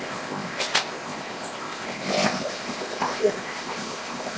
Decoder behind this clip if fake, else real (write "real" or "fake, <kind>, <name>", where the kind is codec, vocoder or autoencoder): fake, codec, ZipCodec